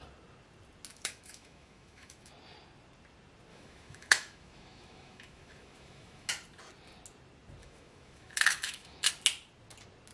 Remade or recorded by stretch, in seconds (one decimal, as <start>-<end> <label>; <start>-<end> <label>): 0.0-0.9 recorded; 0.9-2.3 remade; 2.3-3.5 recorded; 3.5-6.3 remade; 6.3-7.6 recorded; 7.6-9.1 remade; 9.1-10.1 recorded